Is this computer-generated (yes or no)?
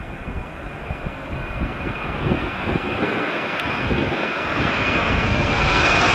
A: yes